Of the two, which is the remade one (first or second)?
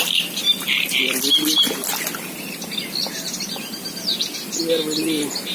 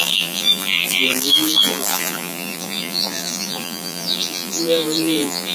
second